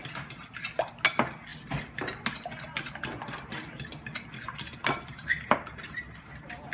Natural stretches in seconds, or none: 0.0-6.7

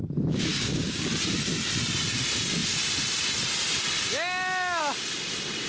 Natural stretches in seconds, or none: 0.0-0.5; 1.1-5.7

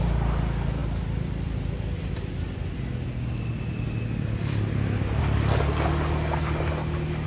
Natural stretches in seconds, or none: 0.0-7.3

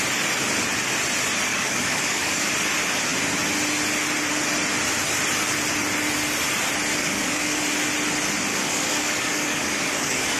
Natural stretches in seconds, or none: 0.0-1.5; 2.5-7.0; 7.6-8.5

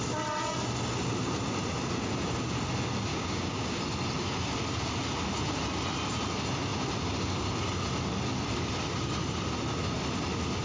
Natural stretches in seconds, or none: 0.0-3.1; 3.8-10.6